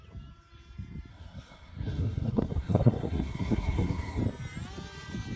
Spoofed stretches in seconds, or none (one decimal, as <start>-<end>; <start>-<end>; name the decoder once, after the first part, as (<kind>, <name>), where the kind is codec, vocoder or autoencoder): 1.1-4.2 (codec, SNAC)